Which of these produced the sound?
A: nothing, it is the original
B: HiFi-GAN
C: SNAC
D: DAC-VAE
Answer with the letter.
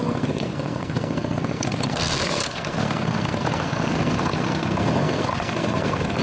C